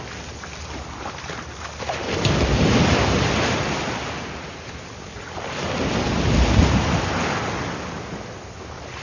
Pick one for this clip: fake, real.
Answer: real